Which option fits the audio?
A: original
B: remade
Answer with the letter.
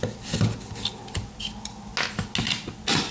A